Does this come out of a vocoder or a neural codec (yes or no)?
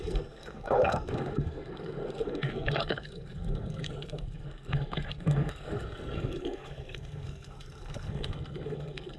yes